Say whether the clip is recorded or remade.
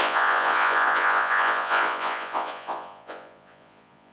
remade